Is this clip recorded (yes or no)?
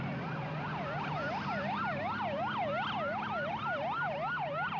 yes